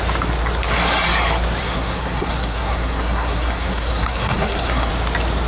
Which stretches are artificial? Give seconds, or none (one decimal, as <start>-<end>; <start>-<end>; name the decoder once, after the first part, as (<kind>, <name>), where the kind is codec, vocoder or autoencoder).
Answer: 1.6-4.9 (codec, SNAC)

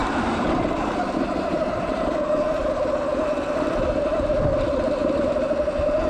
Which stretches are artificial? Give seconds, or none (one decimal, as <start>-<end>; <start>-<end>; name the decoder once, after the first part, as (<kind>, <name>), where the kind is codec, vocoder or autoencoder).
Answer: none

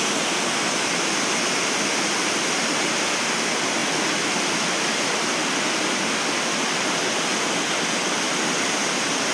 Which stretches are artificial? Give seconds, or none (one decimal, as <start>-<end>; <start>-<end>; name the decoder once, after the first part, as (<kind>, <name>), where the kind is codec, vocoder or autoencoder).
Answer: none

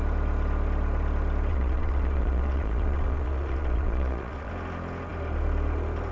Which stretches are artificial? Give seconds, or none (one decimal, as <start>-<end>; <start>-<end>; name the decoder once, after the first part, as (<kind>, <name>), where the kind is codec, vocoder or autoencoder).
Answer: 1.5-4.5 (vocoder, Vocos)

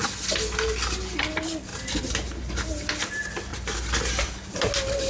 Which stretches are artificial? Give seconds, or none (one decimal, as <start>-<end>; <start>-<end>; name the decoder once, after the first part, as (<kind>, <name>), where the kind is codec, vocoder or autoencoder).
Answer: none

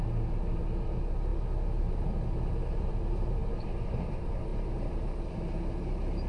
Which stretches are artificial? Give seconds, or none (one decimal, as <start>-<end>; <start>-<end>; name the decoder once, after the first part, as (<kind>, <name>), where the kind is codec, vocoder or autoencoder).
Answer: none